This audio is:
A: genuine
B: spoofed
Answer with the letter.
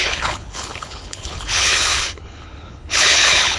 B